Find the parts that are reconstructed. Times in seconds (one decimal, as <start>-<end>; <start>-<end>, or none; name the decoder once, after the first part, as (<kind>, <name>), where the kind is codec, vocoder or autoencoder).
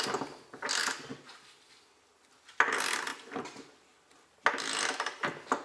none